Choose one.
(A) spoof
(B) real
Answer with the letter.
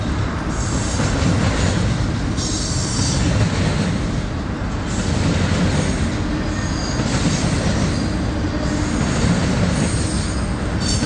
B